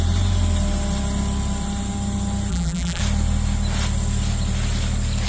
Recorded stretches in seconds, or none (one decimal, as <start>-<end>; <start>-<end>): 0.0-2.5; 3.0-5.3